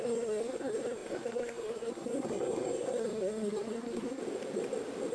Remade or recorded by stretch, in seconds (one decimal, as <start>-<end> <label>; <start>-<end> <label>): 0.0-4.2 remade; 4.2-5.1 recorded